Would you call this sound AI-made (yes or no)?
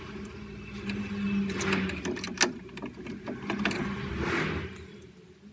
no